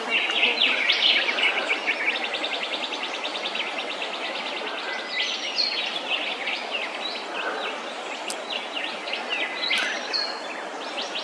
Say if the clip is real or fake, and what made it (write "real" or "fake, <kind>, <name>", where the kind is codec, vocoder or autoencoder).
real